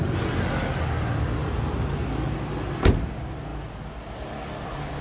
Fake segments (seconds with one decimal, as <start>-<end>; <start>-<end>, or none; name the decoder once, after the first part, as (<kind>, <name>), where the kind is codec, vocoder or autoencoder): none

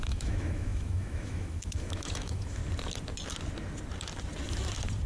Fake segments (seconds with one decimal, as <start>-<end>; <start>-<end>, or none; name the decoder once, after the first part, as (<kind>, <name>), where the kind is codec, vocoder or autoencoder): 0.0-2.6 (autoencoder, DAC-VAE)

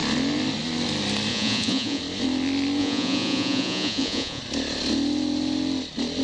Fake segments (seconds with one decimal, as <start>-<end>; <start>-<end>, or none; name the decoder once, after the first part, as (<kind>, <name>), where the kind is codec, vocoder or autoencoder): 1.3-2.0 (vocoder, Vocos); 2.8-4.4